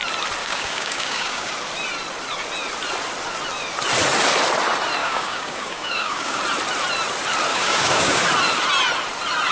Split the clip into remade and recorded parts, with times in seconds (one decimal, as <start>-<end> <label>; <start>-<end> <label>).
0.0-0.4 recorded; 0.4-1.5 remade; 1.5-5.0 recorded; 5.0-6.4 remade; 6.4-7.5 recorded; 7.5-8.2 remade; 8.2-9.5 recorded